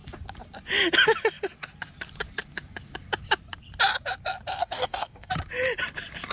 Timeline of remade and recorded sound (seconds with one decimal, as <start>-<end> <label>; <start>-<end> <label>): 0.0-4.6 recorded; 4.6-5.3 remade; 5.3-6.3 recorded